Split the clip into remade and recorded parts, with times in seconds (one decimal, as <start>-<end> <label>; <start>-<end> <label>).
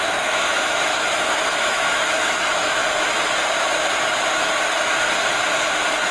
0.0-2.8 remade; 2.8-6.1 recorded